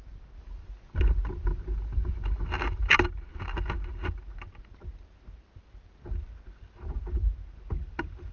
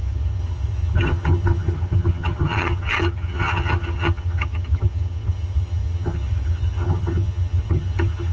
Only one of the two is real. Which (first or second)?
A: first